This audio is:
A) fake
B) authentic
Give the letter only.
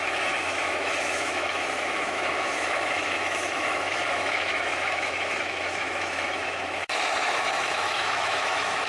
A